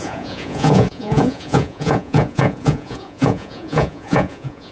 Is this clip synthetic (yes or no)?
yes